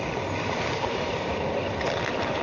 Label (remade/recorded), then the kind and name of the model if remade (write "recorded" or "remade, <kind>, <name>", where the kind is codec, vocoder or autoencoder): recorded